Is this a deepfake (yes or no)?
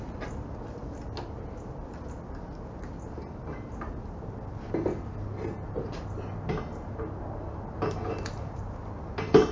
no